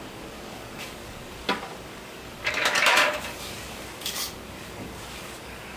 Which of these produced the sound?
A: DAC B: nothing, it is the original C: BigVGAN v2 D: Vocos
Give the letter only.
A